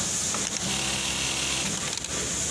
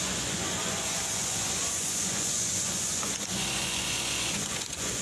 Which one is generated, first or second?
second